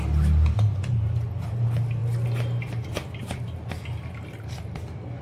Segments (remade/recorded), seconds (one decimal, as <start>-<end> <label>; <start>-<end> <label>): 0.0-5.2 recorded